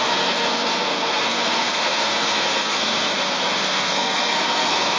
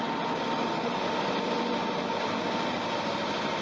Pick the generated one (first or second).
first